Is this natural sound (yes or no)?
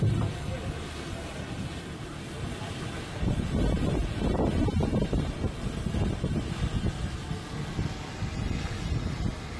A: yes